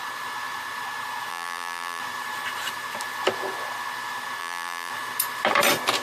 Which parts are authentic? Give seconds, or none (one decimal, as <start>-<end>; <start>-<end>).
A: 0.0-1.3; 2.0-4.4; 4.9-6.0